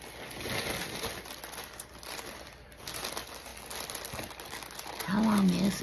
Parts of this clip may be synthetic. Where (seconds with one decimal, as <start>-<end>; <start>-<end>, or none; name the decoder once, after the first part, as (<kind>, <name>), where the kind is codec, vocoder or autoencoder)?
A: none